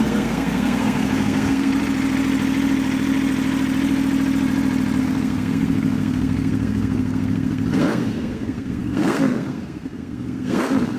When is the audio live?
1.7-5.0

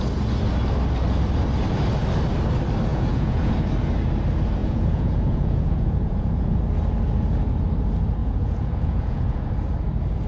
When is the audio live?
0.0-2.9; 3.5-4.6; 6.6-8.2; 9.5-10.3

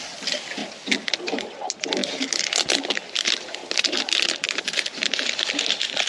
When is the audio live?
0.0-6.1